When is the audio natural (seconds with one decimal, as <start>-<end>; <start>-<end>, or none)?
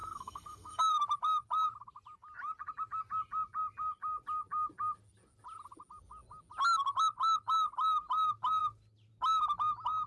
0.8-10.1